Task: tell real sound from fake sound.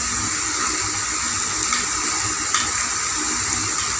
real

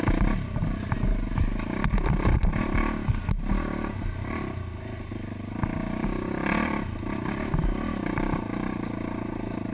real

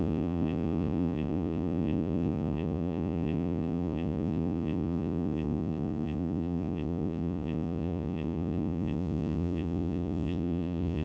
fake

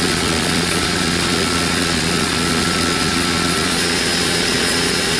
fake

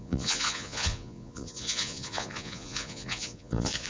fake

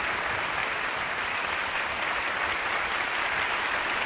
real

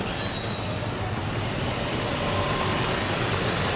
real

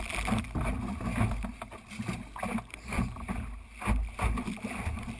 real